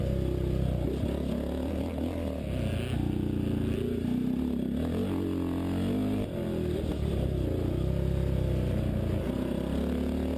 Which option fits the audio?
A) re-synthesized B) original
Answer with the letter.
B